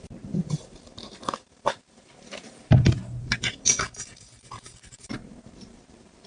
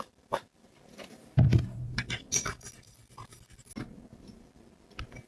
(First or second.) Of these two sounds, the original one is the second